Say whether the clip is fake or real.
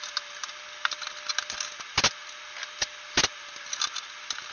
real